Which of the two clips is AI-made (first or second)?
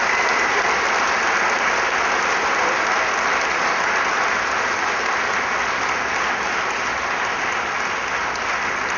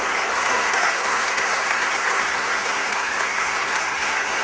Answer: second